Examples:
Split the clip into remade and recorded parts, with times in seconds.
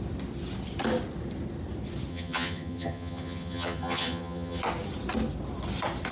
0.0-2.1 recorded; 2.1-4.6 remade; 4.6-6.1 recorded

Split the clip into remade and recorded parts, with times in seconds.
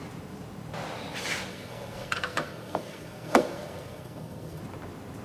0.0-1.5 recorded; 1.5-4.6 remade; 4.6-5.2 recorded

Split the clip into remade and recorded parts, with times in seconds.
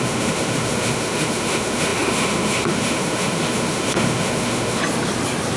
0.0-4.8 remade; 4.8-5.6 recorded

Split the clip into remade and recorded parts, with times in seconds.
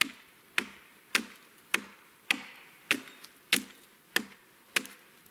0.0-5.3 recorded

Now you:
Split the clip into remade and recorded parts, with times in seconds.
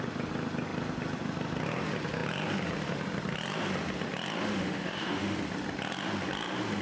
0.0-4.5 recorded; 4.5-5.4 remade; 5.4-6.8 recorded